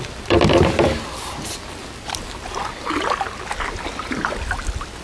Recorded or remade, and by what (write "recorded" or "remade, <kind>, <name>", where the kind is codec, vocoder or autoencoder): recorded